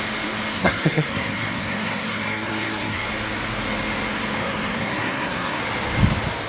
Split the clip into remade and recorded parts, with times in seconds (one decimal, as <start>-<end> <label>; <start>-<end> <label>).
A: 0.0-0.5 recorded; 0.5-3.1 remade; 3.1-4.4 recorded; 4.4-5.6 remade; 5.6-6.5 recorded